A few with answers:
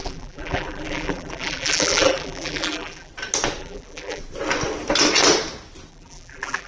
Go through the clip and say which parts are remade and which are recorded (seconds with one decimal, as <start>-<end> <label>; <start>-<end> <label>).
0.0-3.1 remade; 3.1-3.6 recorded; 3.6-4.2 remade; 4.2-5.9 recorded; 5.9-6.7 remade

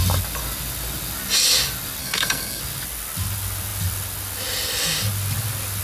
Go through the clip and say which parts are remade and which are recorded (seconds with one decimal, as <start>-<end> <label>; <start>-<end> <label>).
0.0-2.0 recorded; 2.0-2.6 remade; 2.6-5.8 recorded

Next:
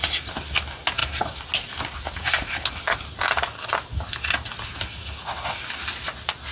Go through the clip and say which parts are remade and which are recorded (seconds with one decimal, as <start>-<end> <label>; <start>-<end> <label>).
0.0-6.5 recorded

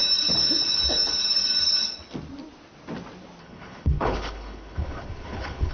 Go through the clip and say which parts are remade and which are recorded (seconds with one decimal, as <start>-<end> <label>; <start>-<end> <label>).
0.0-3.4 recorded; 3.4-5.7 remade

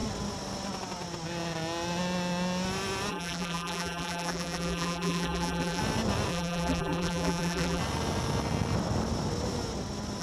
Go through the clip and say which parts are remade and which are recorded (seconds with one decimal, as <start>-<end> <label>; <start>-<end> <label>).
0.0-3.1 recorded; 3.1-5.8 remade; 5.8-6.3 recorded; 6.3-7.8 remade; 7.8-10.2 recorded

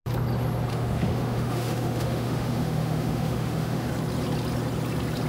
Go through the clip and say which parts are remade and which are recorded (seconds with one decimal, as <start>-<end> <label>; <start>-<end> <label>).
0.0-0.7 recorded; 0.7-3.9 remade; 3.9-5.3 recorded